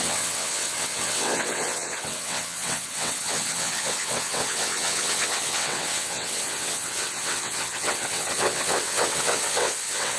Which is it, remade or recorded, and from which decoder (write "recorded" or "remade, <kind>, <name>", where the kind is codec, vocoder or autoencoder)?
remade, vocoder, WaveNeXt